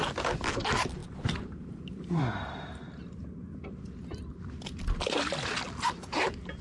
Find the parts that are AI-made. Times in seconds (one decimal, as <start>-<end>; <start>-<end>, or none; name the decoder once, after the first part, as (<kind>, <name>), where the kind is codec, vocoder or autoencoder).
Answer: 1.0-2.2 (vocoder, BigVGAN v2)